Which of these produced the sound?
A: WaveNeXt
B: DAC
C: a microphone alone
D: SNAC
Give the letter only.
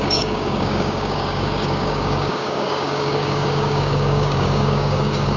B